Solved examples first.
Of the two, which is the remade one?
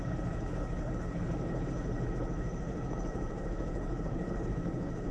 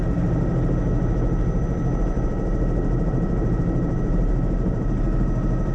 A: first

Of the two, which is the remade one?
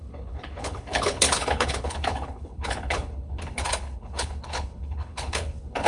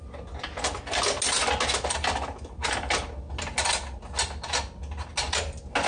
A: first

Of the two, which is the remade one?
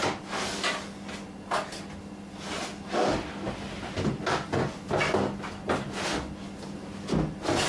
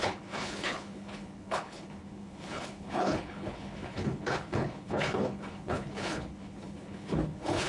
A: second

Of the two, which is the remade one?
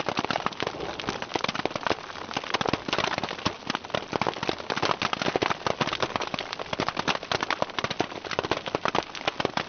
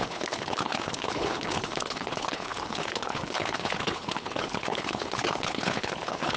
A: second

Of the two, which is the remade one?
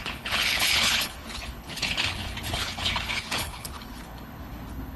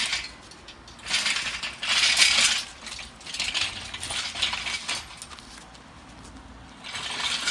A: first